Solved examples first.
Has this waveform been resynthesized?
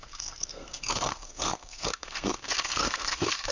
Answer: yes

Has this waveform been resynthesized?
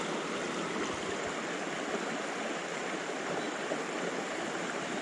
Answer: no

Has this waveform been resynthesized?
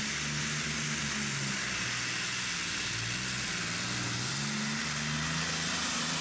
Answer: no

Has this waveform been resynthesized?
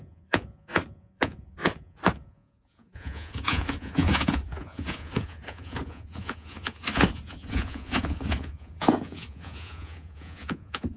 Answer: yes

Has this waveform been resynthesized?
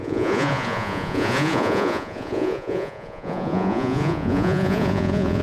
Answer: yes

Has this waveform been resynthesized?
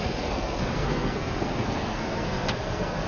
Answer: yes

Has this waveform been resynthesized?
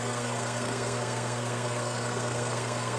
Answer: yes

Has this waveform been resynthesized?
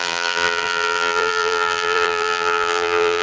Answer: yes